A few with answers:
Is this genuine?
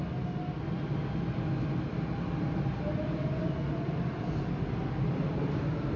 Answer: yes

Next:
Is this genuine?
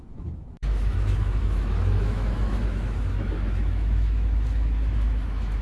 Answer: no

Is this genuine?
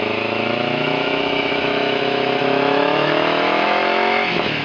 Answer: no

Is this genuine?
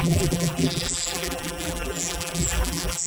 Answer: no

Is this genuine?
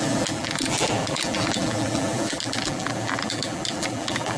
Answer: no